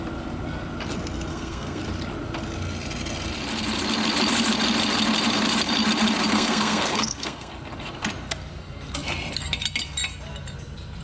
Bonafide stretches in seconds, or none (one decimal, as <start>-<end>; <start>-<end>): 0.0-1.3; 1.8-6.3; 7.5-11.0